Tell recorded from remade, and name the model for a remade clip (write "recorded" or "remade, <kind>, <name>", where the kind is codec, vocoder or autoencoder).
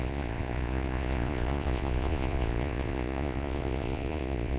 remade, vocoder, Vocos